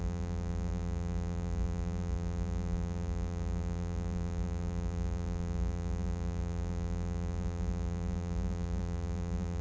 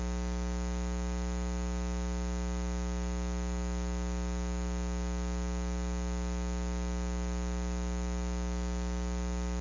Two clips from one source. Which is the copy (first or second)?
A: first